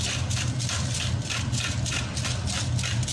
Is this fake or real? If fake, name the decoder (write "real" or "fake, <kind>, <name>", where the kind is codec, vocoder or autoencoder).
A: real